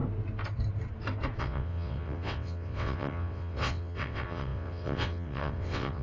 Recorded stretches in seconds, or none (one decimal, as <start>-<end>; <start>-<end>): 0.0-1.4